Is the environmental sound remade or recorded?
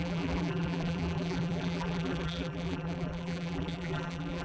remade